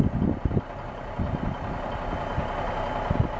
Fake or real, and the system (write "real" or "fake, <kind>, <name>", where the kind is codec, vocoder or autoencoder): real